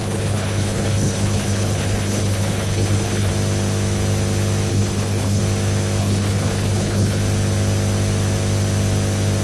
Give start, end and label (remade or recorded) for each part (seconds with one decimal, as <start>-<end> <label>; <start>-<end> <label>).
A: 0.0-3.3 remade; 3.3-4.7 recorded; 4.7-5.4 remade; 5.4-6.0 recorded; 6.0-7.2 remade; 7.2-9.4 recorded